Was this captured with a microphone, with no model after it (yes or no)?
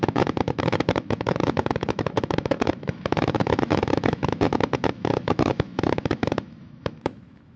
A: no